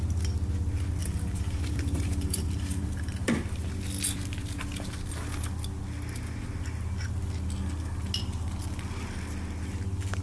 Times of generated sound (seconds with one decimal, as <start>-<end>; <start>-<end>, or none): 1.0-3.7